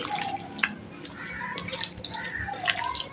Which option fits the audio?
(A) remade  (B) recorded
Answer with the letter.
B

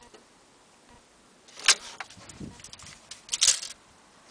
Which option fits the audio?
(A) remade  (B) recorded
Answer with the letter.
B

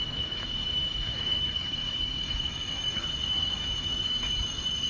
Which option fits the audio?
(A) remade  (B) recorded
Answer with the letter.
A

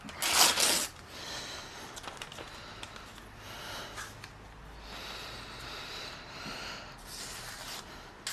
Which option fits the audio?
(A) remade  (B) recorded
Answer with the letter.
B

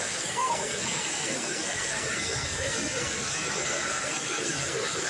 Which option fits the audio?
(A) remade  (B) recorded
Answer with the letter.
A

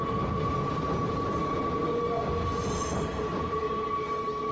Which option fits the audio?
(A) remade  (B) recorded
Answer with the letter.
B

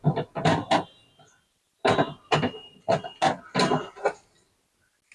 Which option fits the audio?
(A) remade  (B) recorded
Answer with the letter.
B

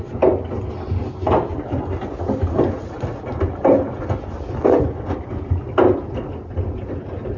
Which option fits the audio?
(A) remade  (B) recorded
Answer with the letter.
B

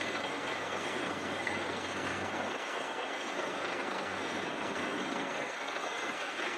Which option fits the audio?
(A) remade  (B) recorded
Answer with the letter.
A